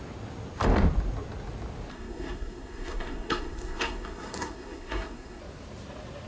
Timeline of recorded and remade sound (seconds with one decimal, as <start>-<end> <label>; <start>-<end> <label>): 0.0-1.9 recorded; 1.9-5.4 remade; 5.4-6.3 recorded